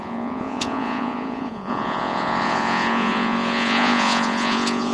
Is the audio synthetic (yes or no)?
yes